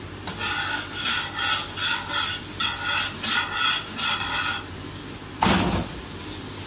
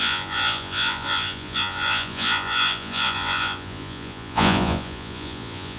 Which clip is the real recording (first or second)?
first